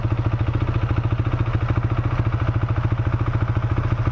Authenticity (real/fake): real